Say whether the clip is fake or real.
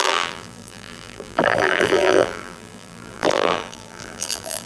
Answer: fake